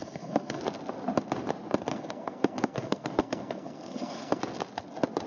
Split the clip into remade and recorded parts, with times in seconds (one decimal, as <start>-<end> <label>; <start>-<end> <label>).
0.0-0.6 remade; 0.6-1.9 recorded; 1.9-4.4 remade; 4.4-5.3 recorded